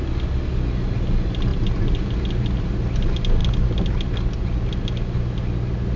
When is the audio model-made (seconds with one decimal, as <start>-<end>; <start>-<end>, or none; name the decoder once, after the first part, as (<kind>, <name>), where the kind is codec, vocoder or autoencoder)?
none